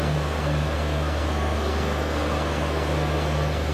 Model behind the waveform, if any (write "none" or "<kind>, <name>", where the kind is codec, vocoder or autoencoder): codec, SNAC